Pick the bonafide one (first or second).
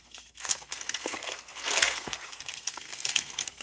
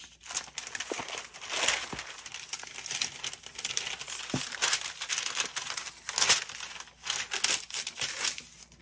second